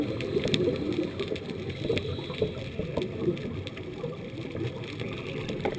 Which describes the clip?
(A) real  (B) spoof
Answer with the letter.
A